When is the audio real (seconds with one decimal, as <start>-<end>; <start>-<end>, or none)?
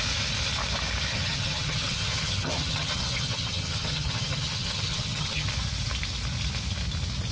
0.0-1.1; 5.5-7.3